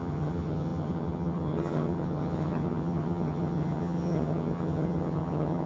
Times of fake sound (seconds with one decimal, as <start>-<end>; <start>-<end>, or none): 0.0-5.7